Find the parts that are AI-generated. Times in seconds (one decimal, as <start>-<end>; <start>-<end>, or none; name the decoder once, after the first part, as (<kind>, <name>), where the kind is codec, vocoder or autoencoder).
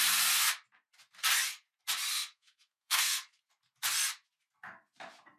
2.1-3.4 (codec, SNAC)